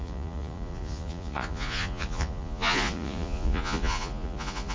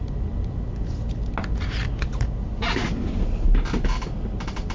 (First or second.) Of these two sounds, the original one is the second